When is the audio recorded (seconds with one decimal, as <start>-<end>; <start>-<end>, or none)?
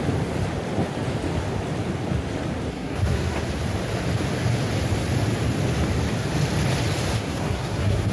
0.0-2.7; 3.5-7.1